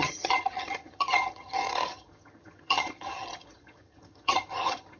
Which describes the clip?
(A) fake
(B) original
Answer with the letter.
A